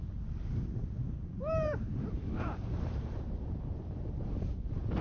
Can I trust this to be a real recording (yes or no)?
no